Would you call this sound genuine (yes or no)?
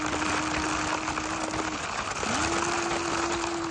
yes